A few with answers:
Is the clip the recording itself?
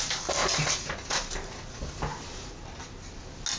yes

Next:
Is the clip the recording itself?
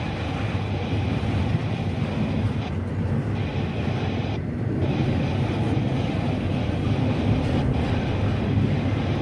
yes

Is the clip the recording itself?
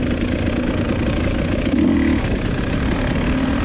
yes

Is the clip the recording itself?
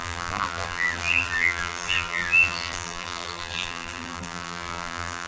no